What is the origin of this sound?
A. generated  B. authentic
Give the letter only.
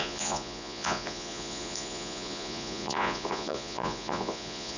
A